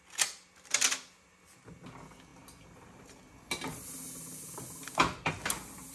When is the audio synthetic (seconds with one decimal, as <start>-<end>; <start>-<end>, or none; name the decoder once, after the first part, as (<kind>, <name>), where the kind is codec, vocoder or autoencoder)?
none